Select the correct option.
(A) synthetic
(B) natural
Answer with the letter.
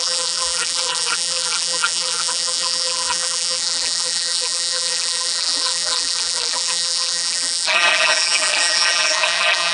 A